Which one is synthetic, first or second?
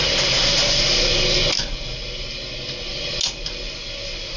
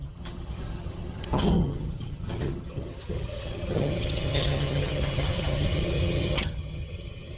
second